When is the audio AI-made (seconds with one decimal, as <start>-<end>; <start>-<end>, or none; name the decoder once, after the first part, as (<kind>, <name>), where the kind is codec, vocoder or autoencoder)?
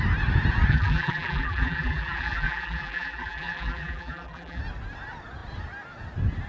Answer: 0.7-4.6 (vocoder, BigVGAN v2)